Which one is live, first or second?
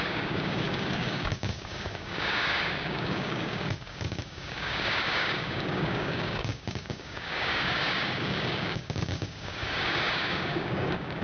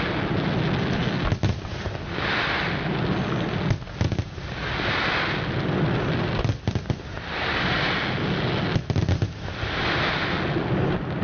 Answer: second